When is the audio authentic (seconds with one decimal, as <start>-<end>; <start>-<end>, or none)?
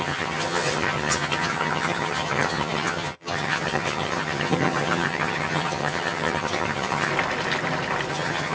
7.1-8.1